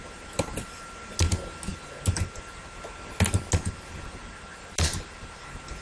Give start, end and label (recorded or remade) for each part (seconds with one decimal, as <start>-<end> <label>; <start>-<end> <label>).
0.0-5.8 recorded